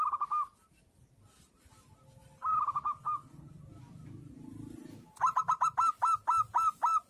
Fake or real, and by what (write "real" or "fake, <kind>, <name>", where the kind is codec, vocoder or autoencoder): real